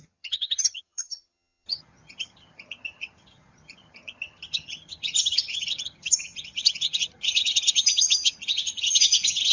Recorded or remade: remade